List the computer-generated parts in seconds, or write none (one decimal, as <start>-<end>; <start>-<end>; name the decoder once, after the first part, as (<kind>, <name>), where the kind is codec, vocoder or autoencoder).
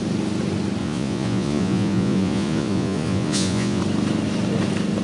0.8-3.8 (vocoder, Vocos)